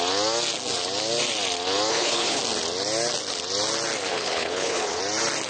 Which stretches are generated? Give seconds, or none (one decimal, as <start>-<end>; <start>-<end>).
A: 1.9-2.4; 4.1-5.0